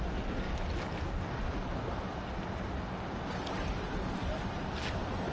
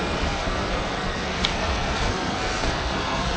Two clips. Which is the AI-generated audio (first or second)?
second